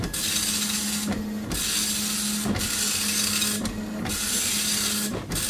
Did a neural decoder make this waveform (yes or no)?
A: no